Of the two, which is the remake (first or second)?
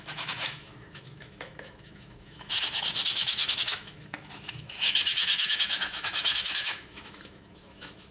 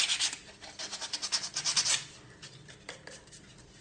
first